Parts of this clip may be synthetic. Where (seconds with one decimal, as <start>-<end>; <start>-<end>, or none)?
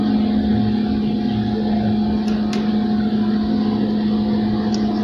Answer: none